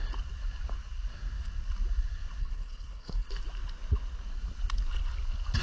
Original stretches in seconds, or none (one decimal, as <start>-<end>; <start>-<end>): 0.0-2.4; 3.3-5.6